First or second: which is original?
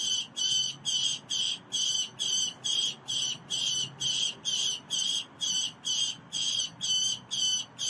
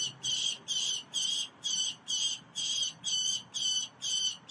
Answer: first